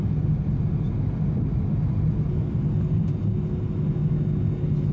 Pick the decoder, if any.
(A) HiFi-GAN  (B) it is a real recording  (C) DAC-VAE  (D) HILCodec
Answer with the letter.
B